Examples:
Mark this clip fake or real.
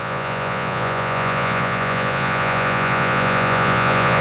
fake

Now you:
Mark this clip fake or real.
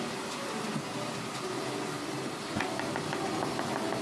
real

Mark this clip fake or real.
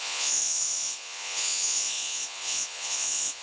fake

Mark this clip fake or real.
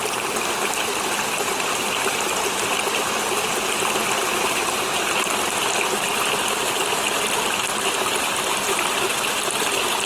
real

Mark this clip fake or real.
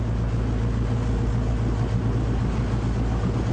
real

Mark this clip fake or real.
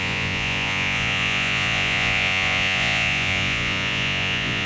fake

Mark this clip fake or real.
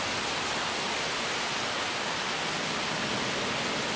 real